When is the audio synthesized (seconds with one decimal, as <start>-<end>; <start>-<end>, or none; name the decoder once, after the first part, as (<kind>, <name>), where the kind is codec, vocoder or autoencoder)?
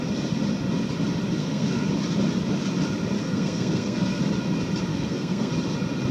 1.4-1.9 (codec, SNAC); 3.2-4.2; 4.9-5.5